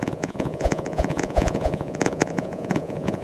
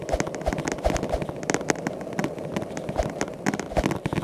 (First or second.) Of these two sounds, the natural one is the second